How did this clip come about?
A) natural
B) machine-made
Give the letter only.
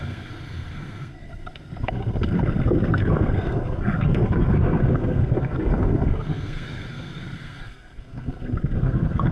B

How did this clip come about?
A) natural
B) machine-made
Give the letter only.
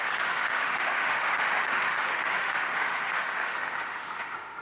B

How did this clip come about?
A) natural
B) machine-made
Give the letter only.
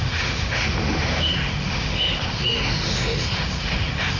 B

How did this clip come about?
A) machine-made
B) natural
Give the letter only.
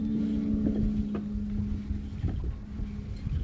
B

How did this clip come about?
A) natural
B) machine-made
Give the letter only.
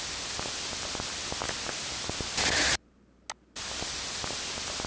A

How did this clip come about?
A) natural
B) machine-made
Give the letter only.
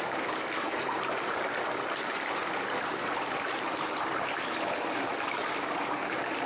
B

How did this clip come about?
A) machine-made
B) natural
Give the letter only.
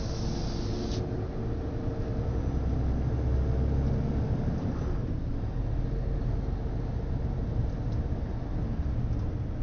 B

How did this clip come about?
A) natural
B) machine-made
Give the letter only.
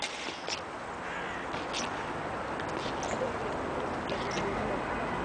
A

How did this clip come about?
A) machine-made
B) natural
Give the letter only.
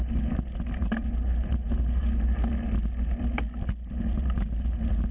B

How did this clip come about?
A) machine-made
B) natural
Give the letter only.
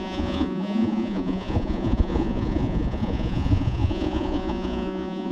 A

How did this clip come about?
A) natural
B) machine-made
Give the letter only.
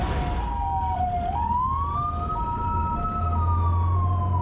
A